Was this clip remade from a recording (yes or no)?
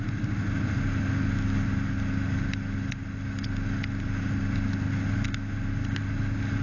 no